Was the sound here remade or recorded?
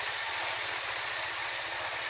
remade